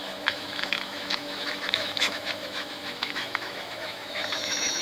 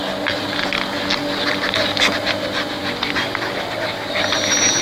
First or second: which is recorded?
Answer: second